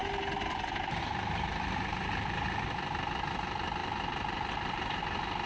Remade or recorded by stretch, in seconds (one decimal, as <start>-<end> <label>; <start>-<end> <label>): 0.0-3.8 recorded; 3.8-5.0 remade; 5.0-5.5 recorded